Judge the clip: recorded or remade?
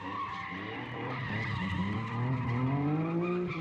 remade